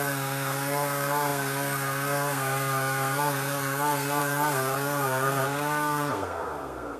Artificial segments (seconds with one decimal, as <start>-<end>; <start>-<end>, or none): 0.0-7.0